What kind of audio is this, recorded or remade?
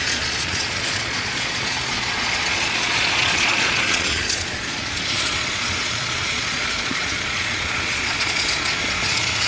remade